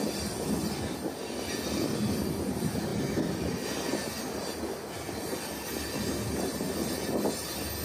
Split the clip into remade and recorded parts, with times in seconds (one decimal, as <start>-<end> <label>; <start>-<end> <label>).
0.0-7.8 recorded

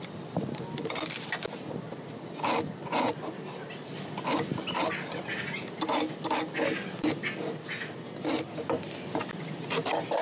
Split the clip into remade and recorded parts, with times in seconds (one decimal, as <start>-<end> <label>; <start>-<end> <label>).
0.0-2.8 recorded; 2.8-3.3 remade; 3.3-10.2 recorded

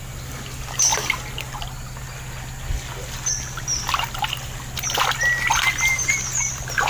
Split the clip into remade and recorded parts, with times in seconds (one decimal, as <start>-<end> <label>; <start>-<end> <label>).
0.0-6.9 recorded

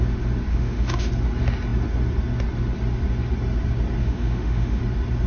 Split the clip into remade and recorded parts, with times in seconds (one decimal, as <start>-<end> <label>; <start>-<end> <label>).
0.0-0.5 recorded; 0.5-1.1 remade; 1.1-4.0 recorded; 4.0-4.8 remade; 4.8-5.3 recorded

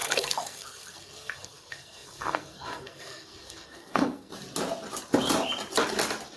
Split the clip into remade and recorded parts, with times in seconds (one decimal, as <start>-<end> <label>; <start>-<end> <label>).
0.0-4.3 remade; 4.3-6.4 recorded

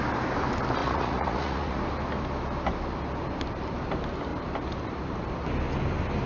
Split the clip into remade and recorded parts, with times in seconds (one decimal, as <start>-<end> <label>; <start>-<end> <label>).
0.0-0.8 recorded; 0.8-1.8 remade; 1.8-6.3 recorded